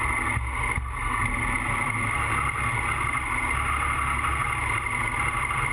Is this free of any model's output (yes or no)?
yes